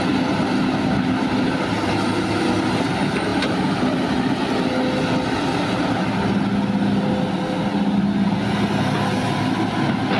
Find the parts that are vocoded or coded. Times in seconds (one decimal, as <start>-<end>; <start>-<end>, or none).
none